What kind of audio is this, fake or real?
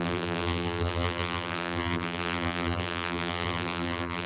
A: fake